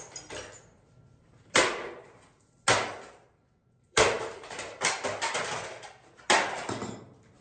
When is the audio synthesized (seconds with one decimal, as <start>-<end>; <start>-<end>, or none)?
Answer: 3.6-4.6